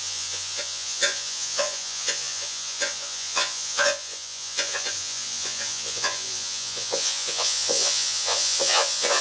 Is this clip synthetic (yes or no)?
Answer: yes